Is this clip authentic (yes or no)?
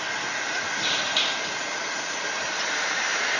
yes